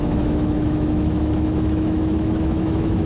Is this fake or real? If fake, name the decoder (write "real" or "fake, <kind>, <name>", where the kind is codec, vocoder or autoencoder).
fake, autoencoder, DAC-VAE